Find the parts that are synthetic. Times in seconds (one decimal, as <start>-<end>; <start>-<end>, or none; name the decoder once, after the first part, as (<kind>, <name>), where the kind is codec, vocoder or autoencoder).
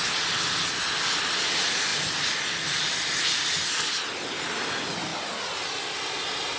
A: none